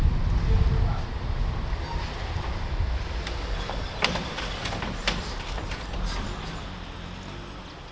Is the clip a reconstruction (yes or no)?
no